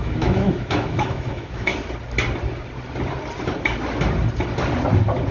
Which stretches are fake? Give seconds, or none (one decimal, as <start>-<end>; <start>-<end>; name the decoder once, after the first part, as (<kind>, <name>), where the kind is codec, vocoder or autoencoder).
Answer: 0.0-1.7 (autoencoder, DAC-VAE)